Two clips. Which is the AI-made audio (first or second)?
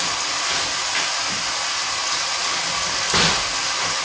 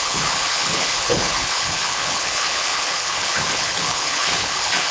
second